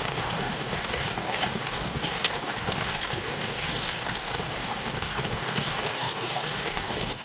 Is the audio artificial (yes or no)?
yes